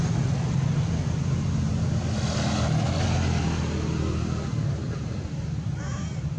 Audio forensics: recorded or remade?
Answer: recorded